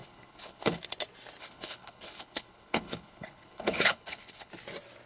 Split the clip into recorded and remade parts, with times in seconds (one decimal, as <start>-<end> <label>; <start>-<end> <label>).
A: 0.0-0.8 remade; 0.8-1.4 recorded; 1.4-4.5 remade; 4.5-5.1 recorded